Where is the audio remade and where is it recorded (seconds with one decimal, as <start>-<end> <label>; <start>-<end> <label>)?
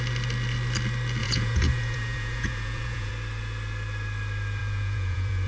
0.0-1.2 recorded; 1.2-3.1 remade; 3.1-4.6 recorded; 4.6-5.5 remade